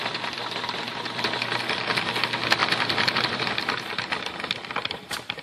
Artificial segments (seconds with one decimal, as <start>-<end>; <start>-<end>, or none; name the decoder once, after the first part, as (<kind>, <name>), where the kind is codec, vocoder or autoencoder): 0.0-5.4 (vocoder, BigVGAN v2)